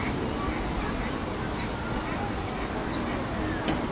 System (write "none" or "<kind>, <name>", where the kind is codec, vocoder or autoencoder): none